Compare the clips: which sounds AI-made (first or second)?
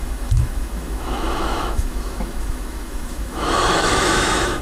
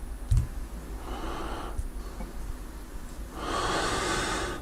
first